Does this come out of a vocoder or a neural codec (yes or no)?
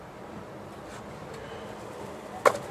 no